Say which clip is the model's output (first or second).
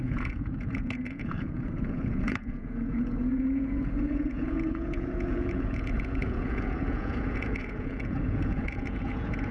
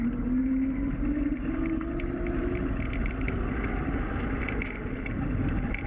first